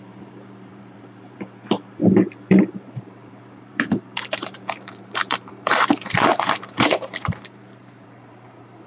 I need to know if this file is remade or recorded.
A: remade